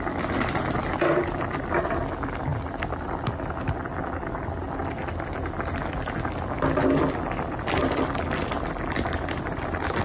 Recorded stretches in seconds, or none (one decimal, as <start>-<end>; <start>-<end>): 0.0-10.0

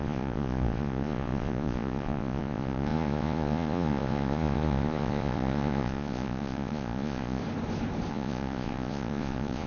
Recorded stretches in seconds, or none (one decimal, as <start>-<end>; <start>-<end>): 7.4-8.1

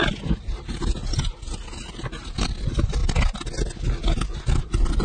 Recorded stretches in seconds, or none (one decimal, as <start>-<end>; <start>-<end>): 0.0-5.0

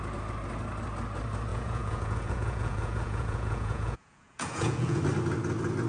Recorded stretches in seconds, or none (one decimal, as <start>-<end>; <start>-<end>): 0.0-1.5; 5.0-5.9

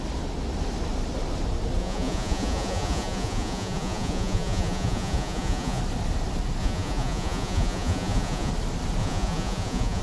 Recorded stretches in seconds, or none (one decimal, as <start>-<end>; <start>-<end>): 0.0-1.8; 5.8-6.6; 8.5-9.0

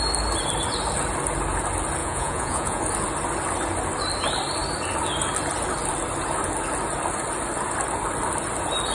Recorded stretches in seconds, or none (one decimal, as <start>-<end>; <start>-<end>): 0.0-2.0; 2.8-8.9

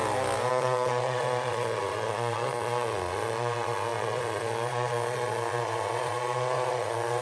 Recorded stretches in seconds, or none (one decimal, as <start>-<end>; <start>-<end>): 0.0-0.5